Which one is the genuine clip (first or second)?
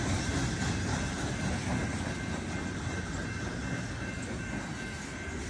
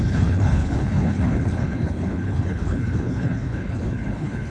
first